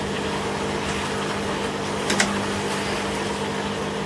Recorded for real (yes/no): yes